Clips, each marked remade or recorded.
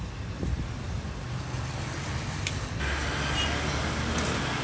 recorded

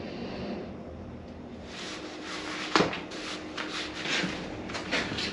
recorded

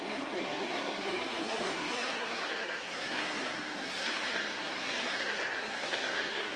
remade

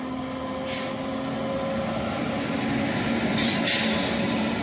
recorded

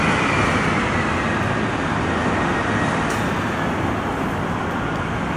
recorded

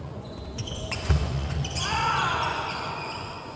remade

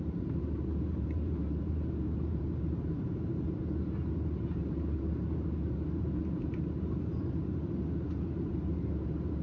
remade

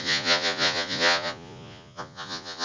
remade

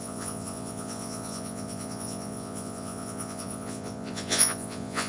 remade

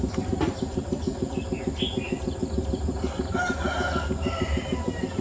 recorded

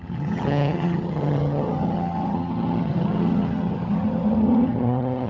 remade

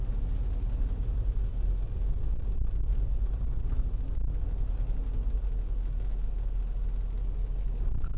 recorded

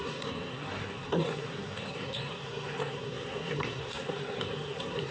remade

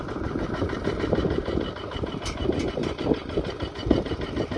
remade